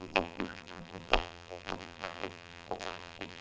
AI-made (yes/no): yes